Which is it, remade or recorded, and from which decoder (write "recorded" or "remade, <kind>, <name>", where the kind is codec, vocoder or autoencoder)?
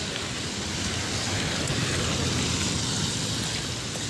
recorded